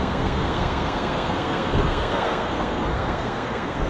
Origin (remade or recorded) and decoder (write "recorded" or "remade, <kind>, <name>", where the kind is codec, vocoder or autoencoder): remade, codec, SNAC